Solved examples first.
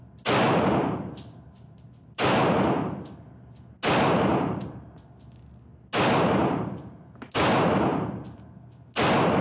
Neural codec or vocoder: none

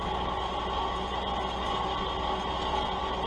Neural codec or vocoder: none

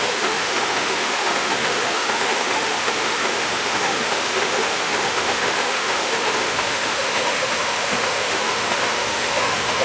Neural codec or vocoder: autoencoder, DAC-VAE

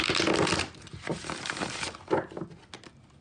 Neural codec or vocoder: none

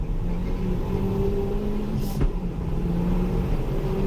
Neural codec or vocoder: vocoder, BigVGAN v2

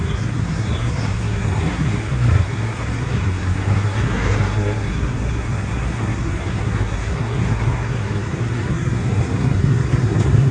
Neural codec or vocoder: codec, SNAC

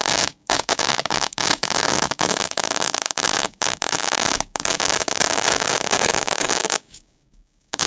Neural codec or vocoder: codec, DAC